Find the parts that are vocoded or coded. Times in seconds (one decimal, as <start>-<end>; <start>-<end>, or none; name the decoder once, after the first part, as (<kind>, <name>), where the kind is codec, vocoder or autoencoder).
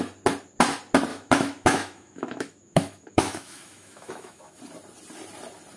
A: 1.1-4.6 (autoencoder, DAC-VAE)